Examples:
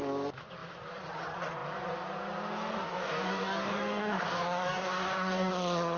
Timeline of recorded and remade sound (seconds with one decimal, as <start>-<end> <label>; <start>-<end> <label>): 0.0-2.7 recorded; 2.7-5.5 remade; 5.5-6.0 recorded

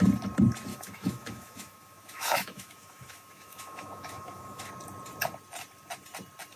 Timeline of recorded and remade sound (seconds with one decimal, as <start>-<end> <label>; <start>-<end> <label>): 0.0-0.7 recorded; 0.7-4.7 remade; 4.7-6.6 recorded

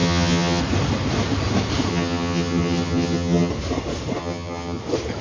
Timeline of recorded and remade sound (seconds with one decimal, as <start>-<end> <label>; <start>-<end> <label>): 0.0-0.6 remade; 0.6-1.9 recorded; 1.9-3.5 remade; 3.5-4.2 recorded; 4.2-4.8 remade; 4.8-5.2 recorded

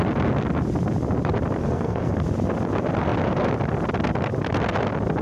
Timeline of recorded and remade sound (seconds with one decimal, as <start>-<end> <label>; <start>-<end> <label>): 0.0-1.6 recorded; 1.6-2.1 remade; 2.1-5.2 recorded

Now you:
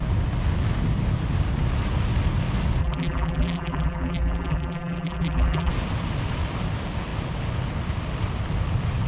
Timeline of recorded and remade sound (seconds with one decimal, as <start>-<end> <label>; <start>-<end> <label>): 0.0-2.8 recorded; 2.8-5.7 remade; 5.7-9.1 recorded